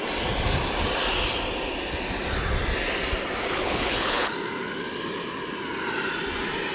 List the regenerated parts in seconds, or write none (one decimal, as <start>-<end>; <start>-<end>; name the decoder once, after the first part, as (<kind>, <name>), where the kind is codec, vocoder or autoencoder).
3.4-4.3 (codec, HILCodec)